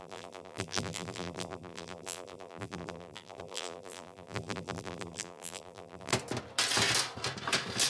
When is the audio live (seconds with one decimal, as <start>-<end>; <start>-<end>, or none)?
6.1-7.9